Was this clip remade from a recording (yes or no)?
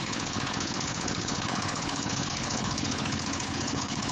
yes